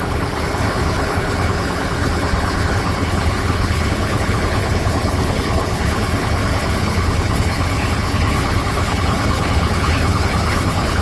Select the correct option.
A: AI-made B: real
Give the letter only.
A